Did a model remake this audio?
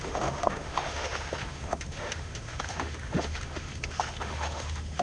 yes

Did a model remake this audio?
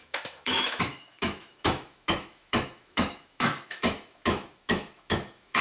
yes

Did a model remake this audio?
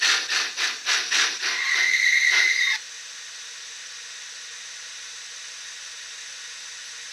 no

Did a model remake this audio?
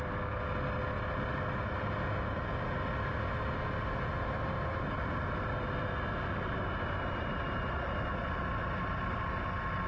no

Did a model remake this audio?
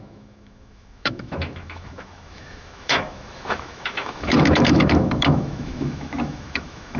yes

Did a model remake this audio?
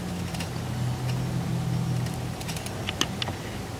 no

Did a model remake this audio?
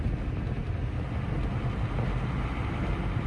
no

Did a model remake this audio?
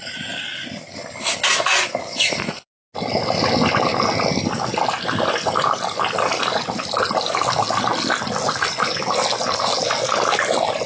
no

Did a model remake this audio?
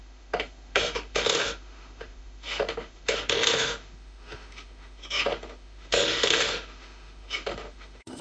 yes